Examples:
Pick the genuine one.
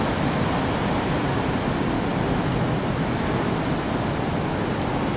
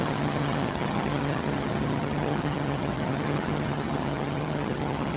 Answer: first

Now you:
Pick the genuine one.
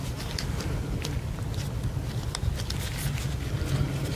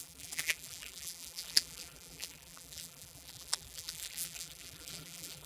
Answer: first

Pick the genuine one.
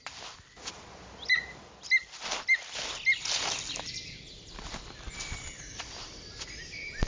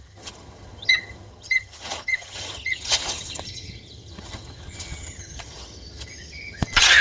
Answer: first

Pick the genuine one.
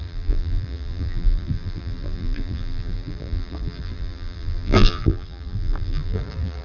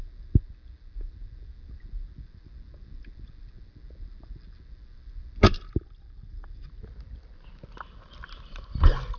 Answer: second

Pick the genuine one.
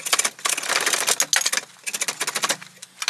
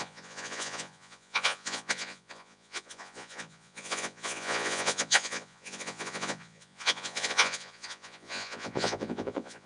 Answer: first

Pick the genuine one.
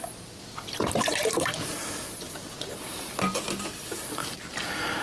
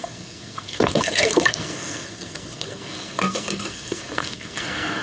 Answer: first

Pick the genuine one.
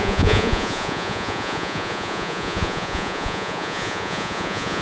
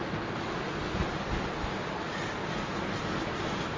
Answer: second